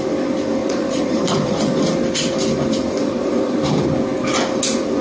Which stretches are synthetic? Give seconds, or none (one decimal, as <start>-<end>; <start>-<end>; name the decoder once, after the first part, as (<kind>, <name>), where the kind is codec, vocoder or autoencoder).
0.6-1.8 (vocoder, Vocos); 3.0-3.6